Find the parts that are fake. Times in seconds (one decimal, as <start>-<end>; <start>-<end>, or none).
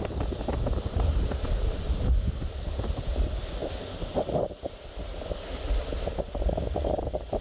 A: none